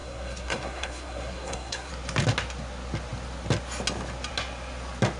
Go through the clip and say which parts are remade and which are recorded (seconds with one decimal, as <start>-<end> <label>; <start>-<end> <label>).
0.0-1.9 remade; 1.9-5.2 recorded